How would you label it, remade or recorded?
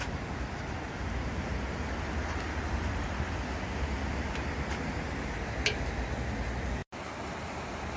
recorded